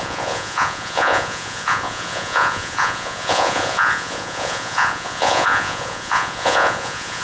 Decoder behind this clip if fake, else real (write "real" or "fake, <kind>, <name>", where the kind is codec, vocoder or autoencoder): fake, vocoder, Vocos